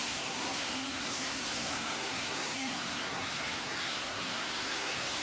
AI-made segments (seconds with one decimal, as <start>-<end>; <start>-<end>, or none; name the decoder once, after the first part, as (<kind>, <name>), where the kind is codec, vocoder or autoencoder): 0.0-5.2 (codec, SNAC)